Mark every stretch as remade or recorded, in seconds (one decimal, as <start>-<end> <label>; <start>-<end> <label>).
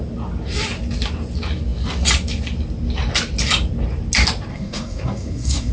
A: 0.0-4.5 recorded; 4.5-5.7 remade